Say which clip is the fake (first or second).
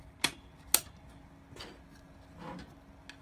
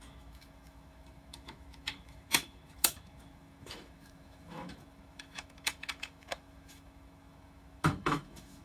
second